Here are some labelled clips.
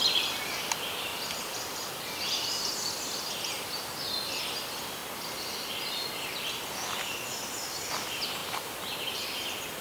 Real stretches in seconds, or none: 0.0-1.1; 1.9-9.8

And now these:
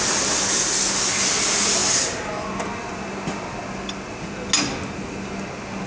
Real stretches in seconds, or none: 0.0-5.9

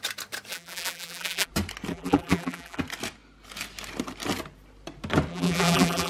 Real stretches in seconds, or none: 0.0-0.5; 1.5-1.9; 2.8-5.3